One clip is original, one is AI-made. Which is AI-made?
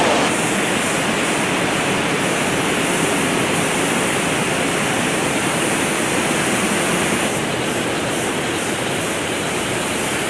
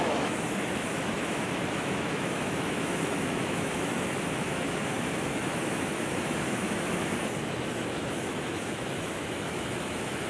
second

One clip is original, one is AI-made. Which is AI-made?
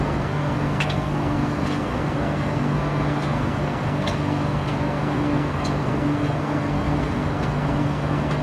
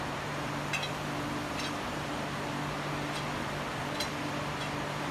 first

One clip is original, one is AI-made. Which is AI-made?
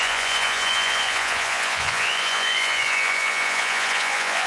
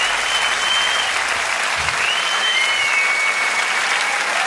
first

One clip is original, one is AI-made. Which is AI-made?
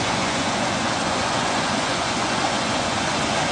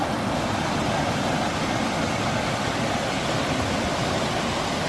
first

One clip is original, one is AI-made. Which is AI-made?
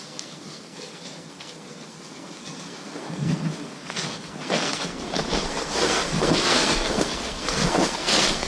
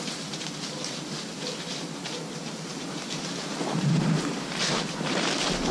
first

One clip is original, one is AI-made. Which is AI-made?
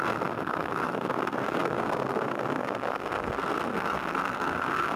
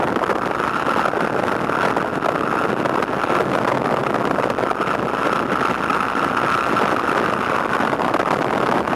first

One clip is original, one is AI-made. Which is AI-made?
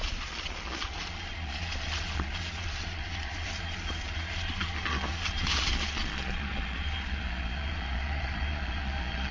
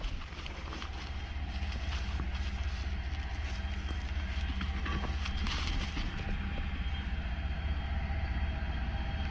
first